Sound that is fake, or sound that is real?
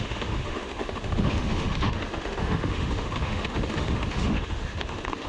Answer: fake